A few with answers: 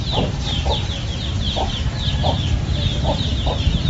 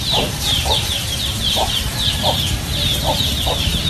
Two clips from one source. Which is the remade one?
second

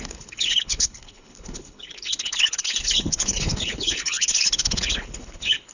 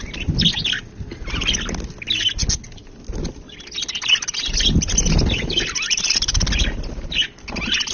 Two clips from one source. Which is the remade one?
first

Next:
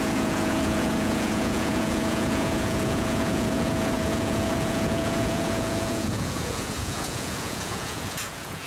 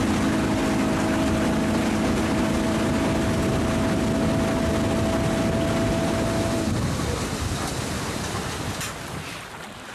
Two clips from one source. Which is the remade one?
first